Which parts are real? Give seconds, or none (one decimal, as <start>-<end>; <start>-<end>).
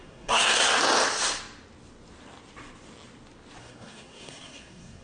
0.6-3.6